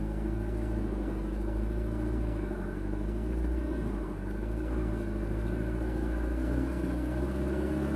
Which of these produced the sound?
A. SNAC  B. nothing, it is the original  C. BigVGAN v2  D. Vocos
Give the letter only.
A